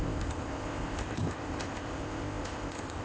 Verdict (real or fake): fake